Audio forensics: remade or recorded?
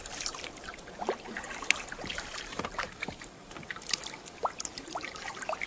remade